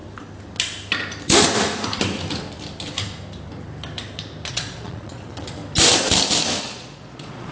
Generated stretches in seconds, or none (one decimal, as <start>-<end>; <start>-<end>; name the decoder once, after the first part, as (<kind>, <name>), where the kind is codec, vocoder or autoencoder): 4.5-5.6 (vocoder, Vocos); 6.6-7.5